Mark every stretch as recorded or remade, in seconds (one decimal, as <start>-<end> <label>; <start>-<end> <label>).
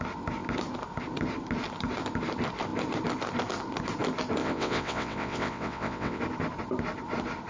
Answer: 0.0-4.4 recorded; 4.4-6.2 remade; 6.2-7.5 recorded